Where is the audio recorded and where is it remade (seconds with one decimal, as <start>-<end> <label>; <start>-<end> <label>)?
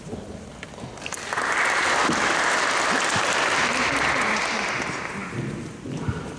0.0-6.4 recorded